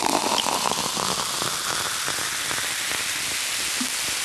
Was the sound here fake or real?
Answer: real